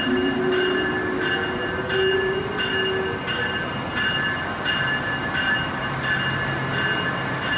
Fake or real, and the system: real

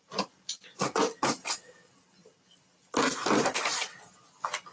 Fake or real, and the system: real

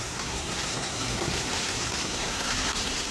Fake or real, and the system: fake, codec, SNAC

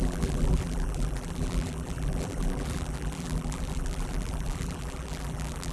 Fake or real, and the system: fake, vocoder, BigVGAN v2